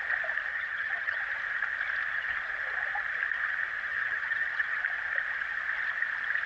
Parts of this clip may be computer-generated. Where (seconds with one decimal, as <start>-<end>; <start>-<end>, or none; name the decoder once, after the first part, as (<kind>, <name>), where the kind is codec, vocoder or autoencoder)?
0.5-1.2 (vocoder, HiFi-GAN); 3.9-4.8